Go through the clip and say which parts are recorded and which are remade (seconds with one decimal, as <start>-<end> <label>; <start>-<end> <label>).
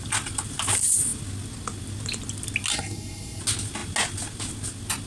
0.0-2.7 recorded; 2.7-3.4 remade; 3.4-5.1 recorded